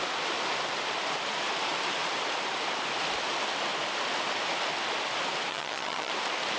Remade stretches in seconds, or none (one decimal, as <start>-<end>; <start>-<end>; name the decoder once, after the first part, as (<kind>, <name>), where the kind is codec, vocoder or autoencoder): 5.5-6.1 (vocoder, HiFi-GAN)